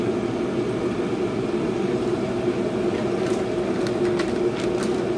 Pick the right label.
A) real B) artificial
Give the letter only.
A